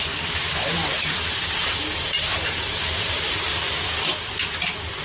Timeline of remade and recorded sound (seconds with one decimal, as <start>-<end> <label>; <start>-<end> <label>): 0.0-0.7 recorded; 0.7-3.7 remade; 3.7-5.0 recorded